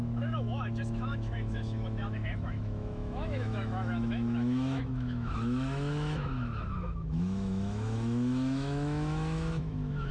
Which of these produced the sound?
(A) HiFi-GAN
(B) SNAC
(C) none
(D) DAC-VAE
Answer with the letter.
D